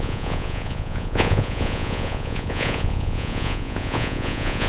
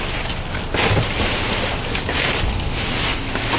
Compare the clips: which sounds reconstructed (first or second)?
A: first